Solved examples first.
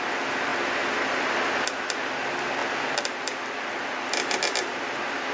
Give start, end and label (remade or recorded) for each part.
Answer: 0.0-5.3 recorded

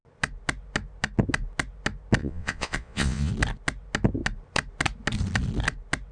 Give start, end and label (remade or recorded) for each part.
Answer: 0.0-2.2 recorded; 2.2-3.3 remade; 3.3-6.1 recorded